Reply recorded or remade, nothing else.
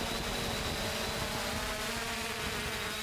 recorded